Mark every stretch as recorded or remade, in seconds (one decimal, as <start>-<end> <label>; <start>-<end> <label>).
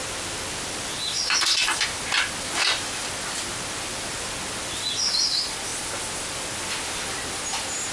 0.0-7.9 recorded